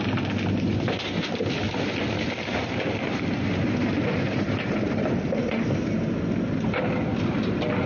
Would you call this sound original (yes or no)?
yes